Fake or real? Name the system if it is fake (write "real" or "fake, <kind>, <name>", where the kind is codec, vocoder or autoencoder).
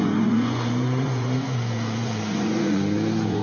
fake, vocoder, Vocos